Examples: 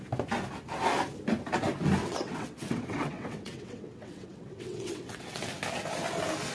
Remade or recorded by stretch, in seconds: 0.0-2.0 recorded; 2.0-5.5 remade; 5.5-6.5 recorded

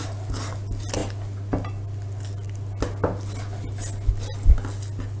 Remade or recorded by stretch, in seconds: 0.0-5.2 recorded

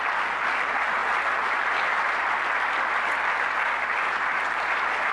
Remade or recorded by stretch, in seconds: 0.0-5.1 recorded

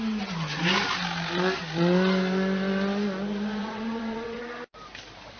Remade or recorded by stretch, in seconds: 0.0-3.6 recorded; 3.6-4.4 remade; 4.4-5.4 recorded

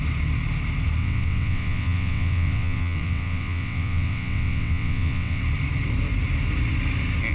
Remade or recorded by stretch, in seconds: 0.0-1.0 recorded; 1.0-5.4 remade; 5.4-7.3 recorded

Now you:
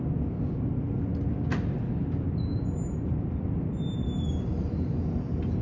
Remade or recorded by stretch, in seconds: 0.0-5.6 recorded